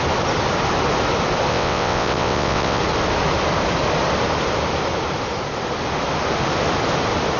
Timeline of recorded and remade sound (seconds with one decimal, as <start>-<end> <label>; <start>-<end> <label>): 0.0-1.5 recorded; 1.5-2.8 remade; 2.8-7.4 recorded